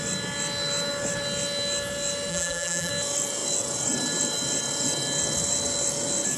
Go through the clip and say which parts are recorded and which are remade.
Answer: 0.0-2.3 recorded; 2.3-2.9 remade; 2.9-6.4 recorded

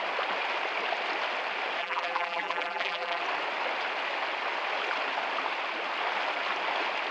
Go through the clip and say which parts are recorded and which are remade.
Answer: 0.0-1.8 recorded; 1.8-3.2 remade; 3.2-7.1 recorded

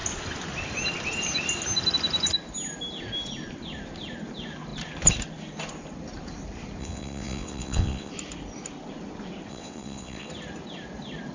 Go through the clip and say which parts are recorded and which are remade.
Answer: 0.0-6.8 recorded; 6.8-8.1 remade; 8.1-9.5 recorded; 9.5-10.3 remade; 10.3-11.3 recorded

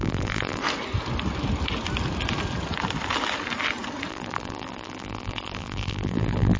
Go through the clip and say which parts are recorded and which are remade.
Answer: 0.0-0.6 remade; 0.6-4.1 recorded; 4.1-6.6 remade